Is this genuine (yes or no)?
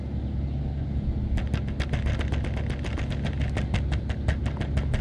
yes